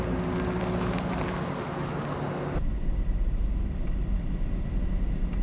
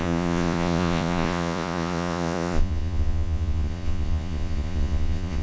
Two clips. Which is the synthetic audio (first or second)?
second